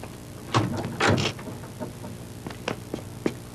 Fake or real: real